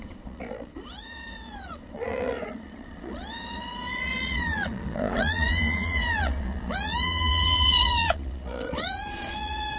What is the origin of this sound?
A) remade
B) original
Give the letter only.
A